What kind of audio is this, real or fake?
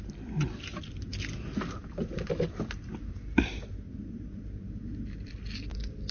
real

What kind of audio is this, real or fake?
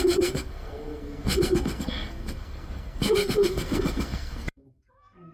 fake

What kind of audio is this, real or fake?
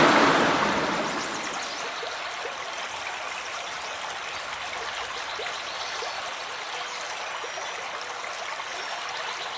real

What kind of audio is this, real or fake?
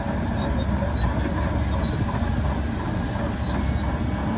real